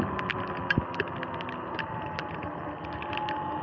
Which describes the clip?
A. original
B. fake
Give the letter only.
A